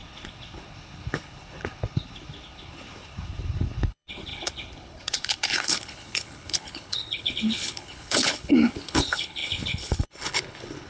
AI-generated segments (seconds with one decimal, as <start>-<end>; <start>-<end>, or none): 0.0-10.9